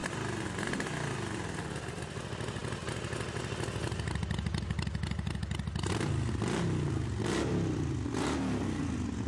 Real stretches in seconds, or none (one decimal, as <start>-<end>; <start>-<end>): 0.0-9.3

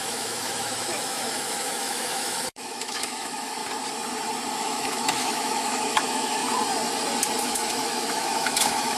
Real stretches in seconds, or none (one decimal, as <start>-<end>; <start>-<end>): 3.6-4.5; 6.4-7.4

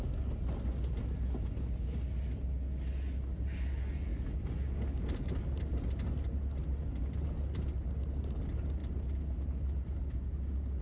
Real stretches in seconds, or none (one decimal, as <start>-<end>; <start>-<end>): 0.0-10.8

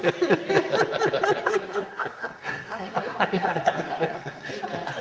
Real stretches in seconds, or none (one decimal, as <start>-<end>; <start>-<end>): 0.0-1.5; 4.5-5.0

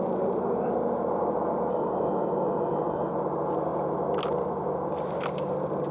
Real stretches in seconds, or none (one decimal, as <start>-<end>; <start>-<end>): 0.0-1.7; 3.1-5.9